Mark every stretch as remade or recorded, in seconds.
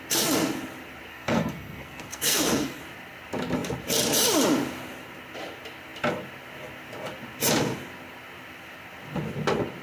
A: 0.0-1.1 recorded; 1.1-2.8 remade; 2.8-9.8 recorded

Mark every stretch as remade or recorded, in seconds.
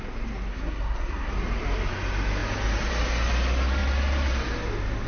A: 0.0-0.5 recorded; 0.5-1.3 remade; 1.3-5.1 recorded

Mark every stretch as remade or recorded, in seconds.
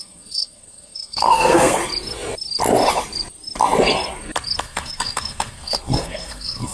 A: 0.0-1.8 remade; 1.8-4.6 recorded; 4.6-6.7 remade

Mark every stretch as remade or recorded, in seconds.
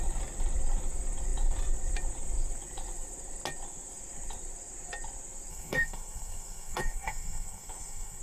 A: 0.0-5.5 recorded; 5.5-8.2 remade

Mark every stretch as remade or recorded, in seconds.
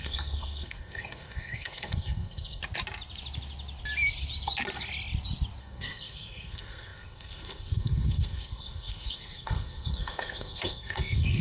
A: 0.0-2.6 remade; 2.6-5.6 recorded; 5.6-11.4 remade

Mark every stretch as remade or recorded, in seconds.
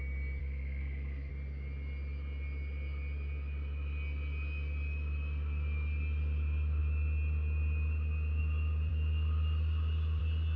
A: 0.0-0.4 recorded; 0.4-1.3 remade; 1.3-10.6 recorded